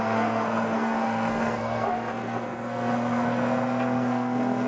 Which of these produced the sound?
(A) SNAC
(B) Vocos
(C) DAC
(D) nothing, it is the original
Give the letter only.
A